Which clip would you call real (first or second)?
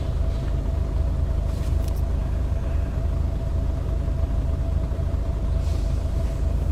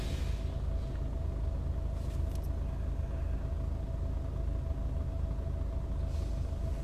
second